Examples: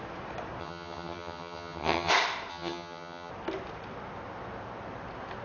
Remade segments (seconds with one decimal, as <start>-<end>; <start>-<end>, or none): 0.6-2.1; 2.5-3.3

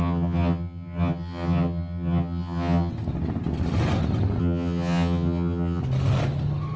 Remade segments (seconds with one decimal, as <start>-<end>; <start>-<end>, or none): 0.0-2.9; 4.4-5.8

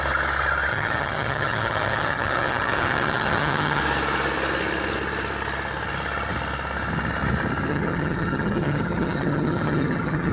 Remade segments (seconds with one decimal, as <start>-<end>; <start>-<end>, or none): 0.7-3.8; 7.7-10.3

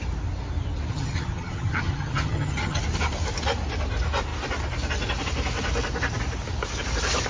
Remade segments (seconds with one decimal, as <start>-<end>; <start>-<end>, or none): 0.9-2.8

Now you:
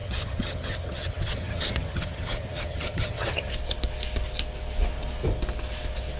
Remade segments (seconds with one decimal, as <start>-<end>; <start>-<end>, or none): 0.0-3.5

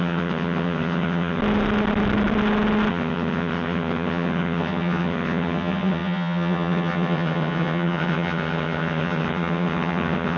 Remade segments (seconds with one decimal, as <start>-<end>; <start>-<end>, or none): 0.0-1.4; 2.9-10.4